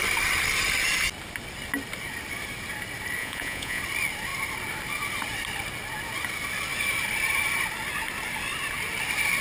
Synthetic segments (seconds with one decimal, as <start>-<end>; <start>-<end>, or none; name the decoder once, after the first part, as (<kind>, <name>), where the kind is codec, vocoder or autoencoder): 3.2-3.8 (vocoder, Vocos)